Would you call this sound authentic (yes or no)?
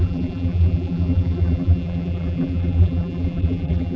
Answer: no